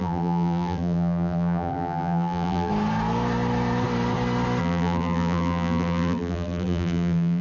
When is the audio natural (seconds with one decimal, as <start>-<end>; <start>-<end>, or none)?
2.7-4.6